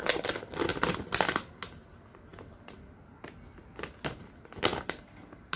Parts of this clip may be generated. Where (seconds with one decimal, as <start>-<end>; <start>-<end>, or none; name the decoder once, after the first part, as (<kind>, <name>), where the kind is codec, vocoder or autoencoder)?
none

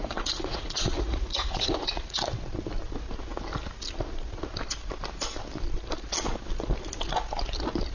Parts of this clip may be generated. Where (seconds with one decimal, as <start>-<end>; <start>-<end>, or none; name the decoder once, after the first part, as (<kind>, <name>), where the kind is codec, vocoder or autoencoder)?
0.0-2.2 (vocoder, Vocos)